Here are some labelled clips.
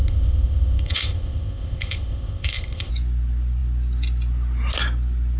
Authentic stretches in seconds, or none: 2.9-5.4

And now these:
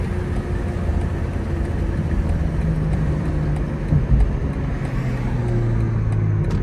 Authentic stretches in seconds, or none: 0.0-0.9; 3.3-6.6

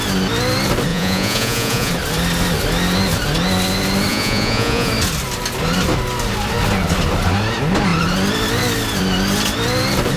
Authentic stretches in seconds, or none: 0.0-0.9; 1.9-4.1; 4.9-10.2

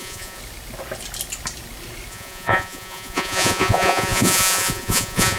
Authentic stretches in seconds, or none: 0.4-2.1

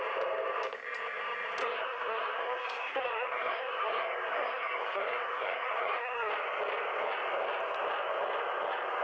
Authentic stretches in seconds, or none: 0.0-1.6; 6.3-9.0

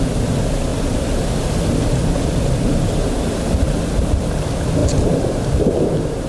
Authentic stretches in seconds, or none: 0.0-6.3

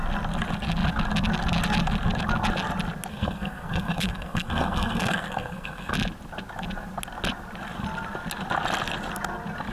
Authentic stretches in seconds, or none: 0.0-3.1; 5.9-9.7